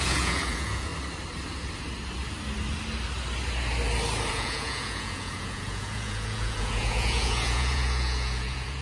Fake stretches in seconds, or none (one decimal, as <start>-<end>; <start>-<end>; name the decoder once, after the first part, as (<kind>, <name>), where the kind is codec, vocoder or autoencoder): 0.0-0.9 (vocoder, Vocos); 4.3-8.8